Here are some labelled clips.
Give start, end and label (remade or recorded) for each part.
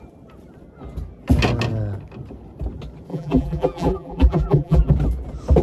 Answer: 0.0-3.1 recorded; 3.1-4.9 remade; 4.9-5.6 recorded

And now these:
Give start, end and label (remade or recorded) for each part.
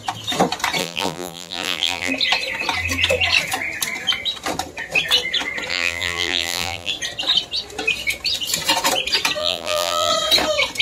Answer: 0.0-0.8 recorded; 0.8-2.1 remade; 2.1-5.7 recorded; 5.7-6.9 remade; 6.9-9.4 recorded; 9.4-10.1 remade; 10.1-10.8 recorded